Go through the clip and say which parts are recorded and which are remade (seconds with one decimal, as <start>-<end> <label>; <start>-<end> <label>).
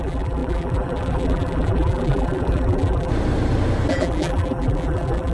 0.0-3.1 remade; 3.1-3.9 recorded; 3.9-5.3 remade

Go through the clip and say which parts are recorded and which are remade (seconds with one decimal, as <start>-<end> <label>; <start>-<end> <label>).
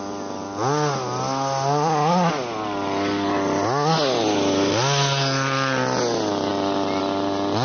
0.0-6.5 recorded; 6.5-7.0 remade; 7.0-7.6 recorded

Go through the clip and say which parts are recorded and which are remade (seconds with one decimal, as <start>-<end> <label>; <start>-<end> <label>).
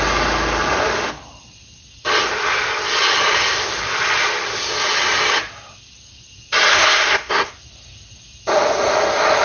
0.0-6.7 recorded; 6.7-7.5 remade; 7.5-9.4 recorded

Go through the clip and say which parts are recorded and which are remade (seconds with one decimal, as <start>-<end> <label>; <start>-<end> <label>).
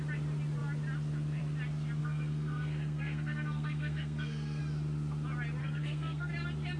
0.0-2.0 recorded; 2.0-4.6 remade; 4.6-5.6 recorded; 5.6-6.3 remade; 6.3-6.8 recorded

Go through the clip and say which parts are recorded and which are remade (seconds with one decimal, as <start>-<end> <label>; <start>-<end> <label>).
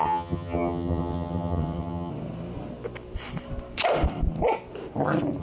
0.0-2.1 remade; 2.1-5.4 recorded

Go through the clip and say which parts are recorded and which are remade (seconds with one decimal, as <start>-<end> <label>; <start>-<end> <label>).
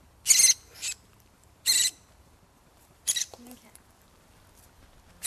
0.0-1.1 recorded; 1.1-4.3 remade; 4.3-5.3 recorded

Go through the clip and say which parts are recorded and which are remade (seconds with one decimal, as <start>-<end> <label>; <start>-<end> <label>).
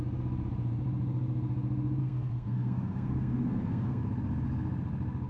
0.0-2.0 recorded; 2.0-4.0 remade; 4.0-5.3 recorded